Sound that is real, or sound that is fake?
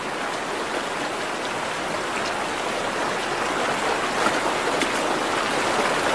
real